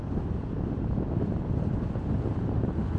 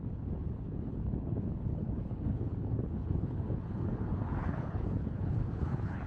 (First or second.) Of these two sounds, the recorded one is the first